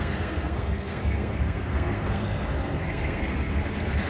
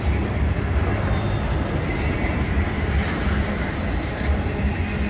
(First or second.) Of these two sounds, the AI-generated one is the first